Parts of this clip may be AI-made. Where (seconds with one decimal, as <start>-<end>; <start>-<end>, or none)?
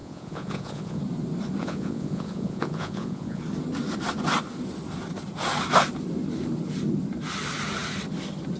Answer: 0.0-1.0; 1.6-3.4